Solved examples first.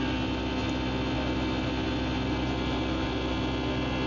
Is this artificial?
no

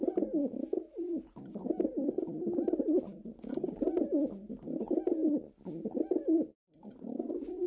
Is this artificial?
no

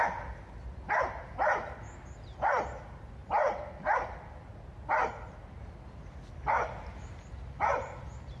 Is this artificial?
no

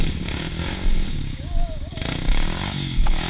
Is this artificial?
yes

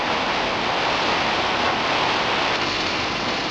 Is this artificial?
no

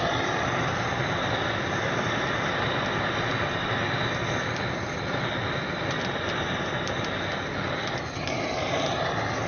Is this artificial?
no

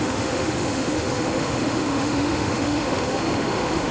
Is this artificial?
yes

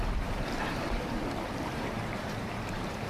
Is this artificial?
yes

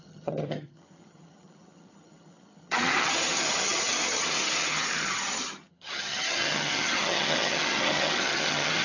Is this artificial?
yes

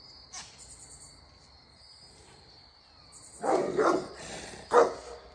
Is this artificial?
no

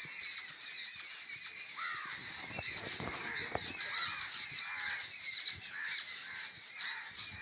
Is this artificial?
no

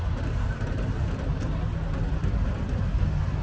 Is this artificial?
no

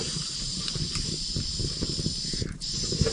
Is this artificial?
yes